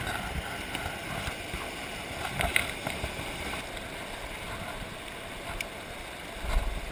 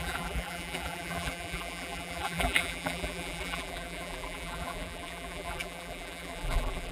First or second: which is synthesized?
second